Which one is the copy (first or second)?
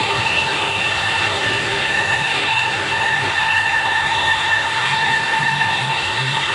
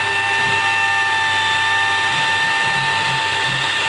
first